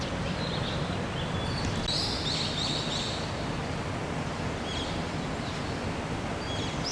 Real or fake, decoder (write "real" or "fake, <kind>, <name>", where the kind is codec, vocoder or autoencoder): real